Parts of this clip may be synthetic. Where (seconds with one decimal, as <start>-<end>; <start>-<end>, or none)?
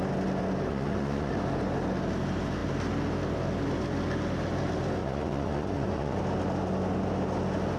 0.7-1.3; 5.0-6.2